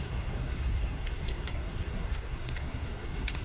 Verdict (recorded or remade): remade